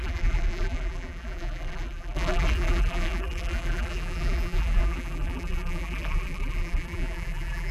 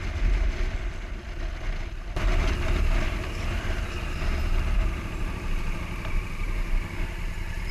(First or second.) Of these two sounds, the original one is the second